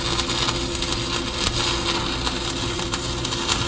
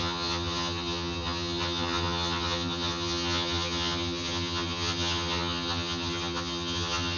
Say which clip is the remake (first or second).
second